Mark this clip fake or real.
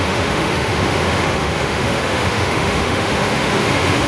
fake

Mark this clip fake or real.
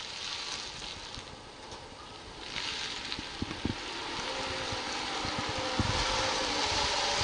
real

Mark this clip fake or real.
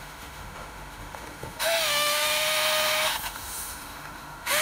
fake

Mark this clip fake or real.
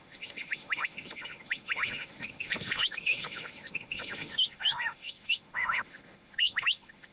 fake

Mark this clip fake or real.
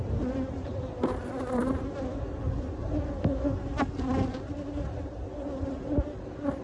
real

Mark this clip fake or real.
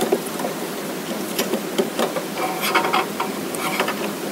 real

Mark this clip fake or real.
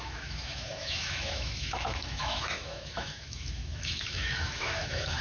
fake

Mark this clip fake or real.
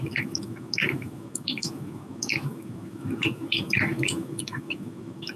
fake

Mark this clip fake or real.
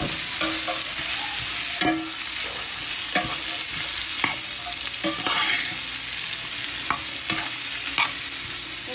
real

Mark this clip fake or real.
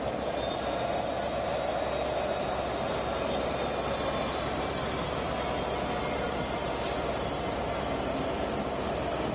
real